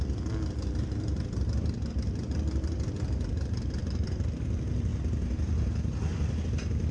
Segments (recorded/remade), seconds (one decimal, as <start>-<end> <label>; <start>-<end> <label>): 0.0-4.9 remade; 4.9-6.4 recorded; 6.4-6.9 remade